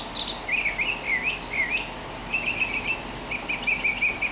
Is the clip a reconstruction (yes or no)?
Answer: no